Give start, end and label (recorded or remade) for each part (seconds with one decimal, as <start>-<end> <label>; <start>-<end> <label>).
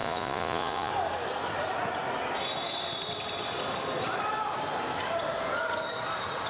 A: 0.0-0.9 remade; 0.9-6.5 recorded